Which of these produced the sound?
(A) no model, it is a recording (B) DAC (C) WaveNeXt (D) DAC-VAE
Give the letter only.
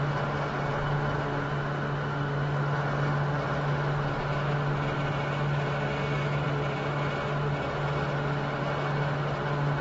A